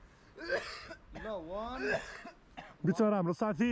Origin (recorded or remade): recorded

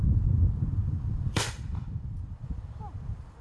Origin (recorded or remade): remade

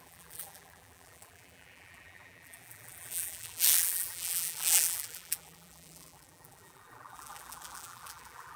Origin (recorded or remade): remade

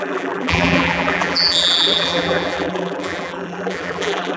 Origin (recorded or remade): remade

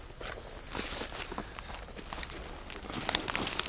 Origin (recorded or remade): recorded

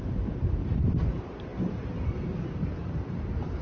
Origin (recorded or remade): remade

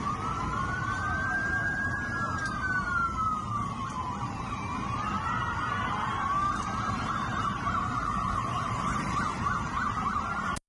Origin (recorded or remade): remade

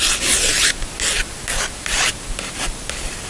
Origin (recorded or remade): recorded